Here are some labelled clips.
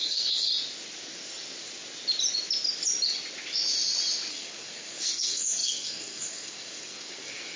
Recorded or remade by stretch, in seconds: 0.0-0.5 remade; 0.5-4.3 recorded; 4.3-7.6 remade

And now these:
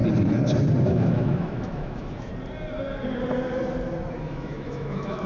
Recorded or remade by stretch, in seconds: 0.0-0.8 recorded; 0.8-2.3 remade; 2.3-4.1 recorded; 4.1-5.3 remade

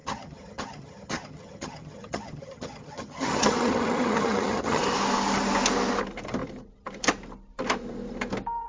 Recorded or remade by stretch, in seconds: 0.0-4.8 remade; 4.8-8.7 recorded